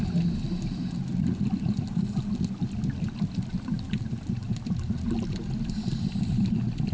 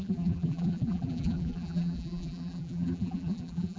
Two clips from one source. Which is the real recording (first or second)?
first